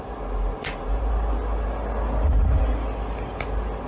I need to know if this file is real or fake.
real